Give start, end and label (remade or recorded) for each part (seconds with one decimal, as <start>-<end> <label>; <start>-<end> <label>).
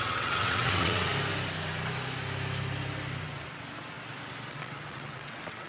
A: 0.0-1.1 remade; 1.1-4.5 recorded; 4.5-5.7 remade